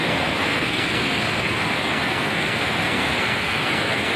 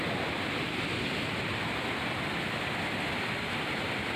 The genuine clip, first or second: second